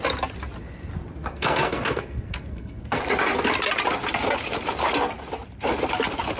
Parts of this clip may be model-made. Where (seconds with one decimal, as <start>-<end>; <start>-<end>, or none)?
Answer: 1.2-3.0